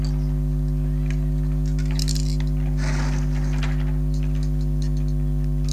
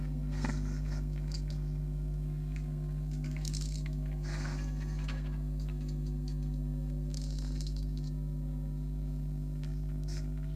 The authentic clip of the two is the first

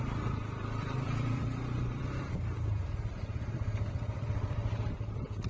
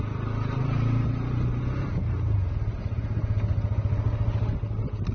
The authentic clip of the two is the second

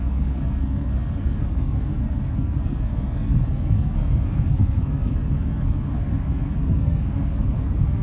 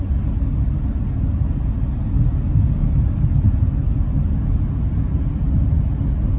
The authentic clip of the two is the second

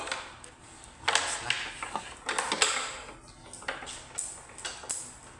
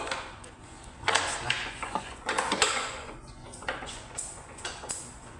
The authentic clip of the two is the first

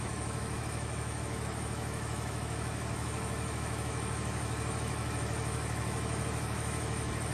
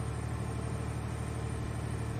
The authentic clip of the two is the second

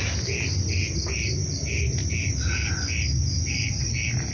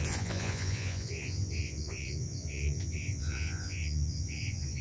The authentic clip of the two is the first